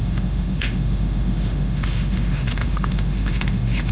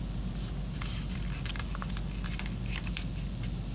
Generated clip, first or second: first